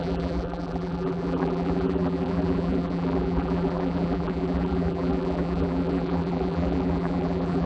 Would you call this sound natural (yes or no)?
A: no